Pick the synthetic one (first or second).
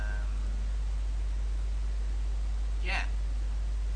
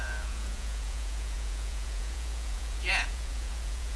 second